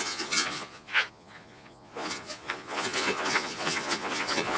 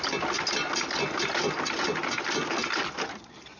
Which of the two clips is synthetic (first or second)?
first